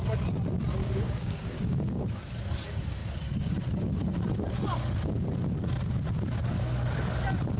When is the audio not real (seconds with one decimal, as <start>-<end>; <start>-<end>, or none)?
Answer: 0.8-2.2